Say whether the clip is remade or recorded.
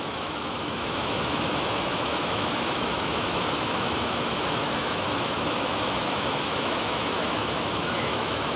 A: remade